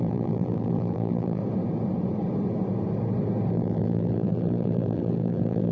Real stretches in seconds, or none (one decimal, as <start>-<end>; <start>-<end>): 1.4-3.5